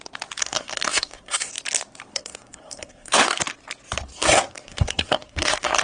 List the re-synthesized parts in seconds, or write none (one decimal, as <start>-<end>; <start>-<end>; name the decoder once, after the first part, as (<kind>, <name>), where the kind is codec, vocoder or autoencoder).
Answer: 0.4-1.5 (codec, SNAC); 2.1-3.4; 4.1-5.8